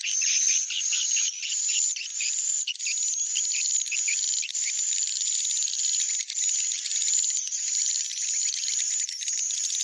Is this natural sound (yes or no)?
no